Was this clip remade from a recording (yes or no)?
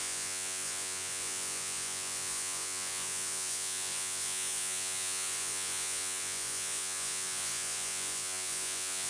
yes